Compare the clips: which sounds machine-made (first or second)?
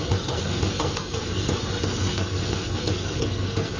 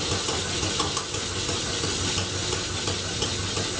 first